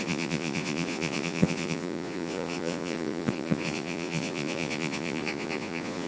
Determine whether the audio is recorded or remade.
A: remade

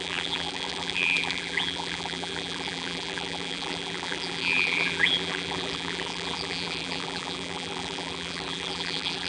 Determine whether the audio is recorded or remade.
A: remade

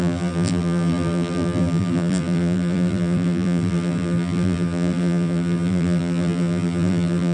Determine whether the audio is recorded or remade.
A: remade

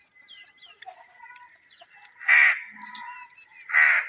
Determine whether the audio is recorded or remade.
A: recorded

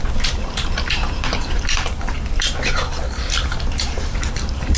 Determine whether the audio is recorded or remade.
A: remade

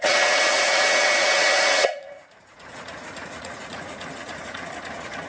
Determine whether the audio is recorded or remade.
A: remade